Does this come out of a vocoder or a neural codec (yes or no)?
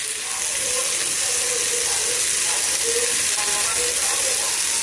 no